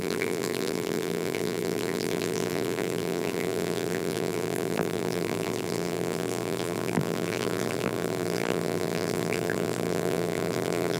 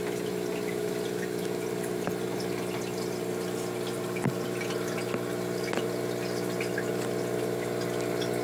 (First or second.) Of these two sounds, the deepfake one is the first